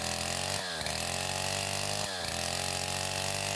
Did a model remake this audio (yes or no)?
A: no